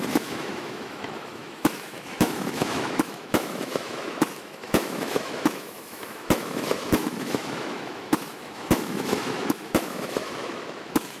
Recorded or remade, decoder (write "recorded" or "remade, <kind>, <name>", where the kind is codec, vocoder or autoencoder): remade, autoencoder, DAC-VAE